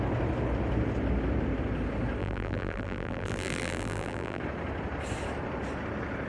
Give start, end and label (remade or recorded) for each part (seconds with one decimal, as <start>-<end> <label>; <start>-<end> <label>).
0.0-2.2 recorded; 2.2-4.4 remade; 4.4-6.3 recorded